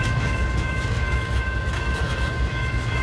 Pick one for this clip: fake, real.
fake